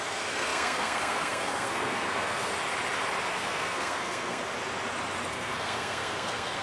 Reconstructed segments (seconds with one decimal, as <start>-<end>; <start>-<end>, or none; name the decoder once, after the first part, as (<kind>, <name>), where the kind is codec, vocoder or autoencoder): 0.0-2.5 (codec, SNAC); 3.3-4.4; 5.3-6.6